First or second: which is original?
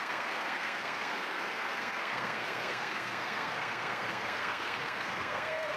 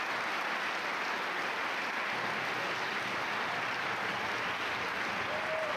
second